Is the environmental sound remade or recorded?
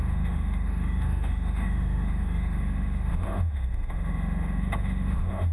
remade